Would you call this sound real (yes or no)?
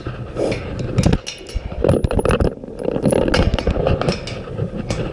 yes